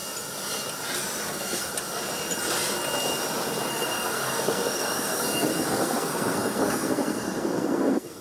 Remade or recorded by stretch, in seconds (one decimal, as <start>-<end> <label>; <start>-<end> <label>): 0.0-1.2 recorded; 1.2-1.7 remade; 1.7-3.7 recorded; 3.7-8.2 remade